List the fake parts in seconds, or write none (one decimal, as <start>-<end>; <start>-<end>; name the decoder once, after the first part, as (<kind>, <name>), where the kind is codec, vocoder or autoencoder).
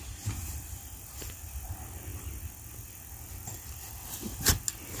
none